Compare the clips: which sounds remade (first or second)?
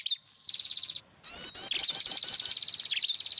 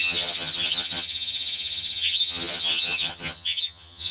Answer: second